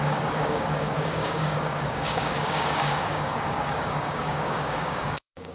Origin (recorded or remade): remade